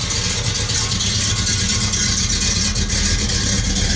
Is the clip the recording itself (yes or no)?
yes